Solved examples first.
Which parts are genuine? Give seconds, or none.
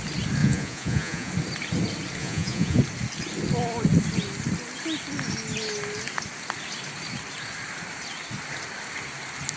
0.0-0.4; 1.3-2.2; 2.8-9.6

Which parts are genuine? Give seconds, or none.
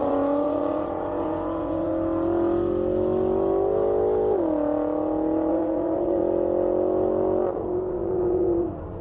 1.9-5.5; 6.2-7.9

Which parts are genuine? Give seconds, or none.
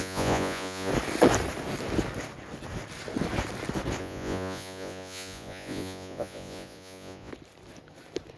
0.9-4.0; 7.3-8.4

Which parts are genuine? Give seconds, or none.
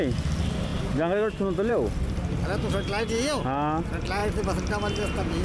0.0-5.4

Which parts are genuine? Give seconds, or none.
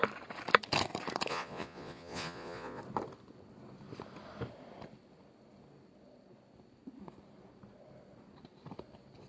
0.0-1.3; 2.8-9.3